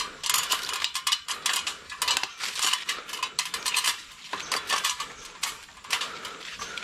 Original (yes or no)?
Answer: yes